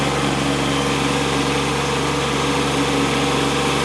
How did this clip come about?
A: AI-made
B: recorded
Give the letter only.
B